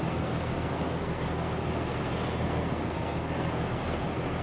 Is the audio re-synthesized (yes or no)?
yes